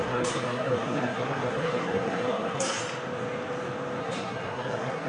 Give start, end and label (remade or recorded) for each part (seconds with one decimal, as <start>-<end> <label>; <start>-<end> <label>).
0.0-2.8 remade; 2.8-4.0 recorded; 4.0-5.1 remade